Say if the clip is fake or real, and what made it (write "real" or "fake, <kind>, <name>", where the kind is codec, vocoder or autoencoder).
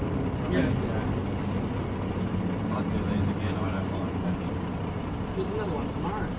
real